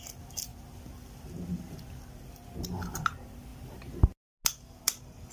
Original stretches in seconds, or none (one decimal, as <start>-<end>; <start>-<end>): 0.0-5.3